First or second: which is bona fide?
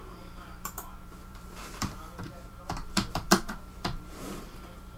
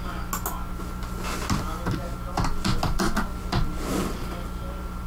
second